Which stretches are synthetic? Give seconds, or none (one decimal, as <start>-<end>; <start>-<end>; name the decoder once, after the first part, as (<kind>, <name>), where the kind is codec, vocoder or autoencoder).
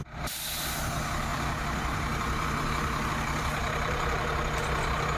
1.3-3.1 (vocoder, BigVGAN v2); 3.6-4.3